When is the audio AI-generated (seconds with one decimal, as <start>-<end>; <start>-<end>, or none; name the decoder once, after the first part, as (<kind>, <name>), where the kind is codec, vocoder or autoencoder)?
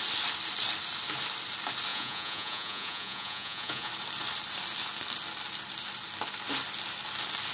1.9-3.9 (vocoder, Vocos)